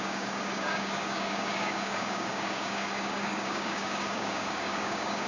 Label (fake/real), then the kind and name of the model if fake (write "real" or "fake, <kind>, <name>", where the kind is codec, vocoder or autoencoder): fake, codec, DAC